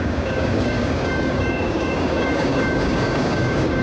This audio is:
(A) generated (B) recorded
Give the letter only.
A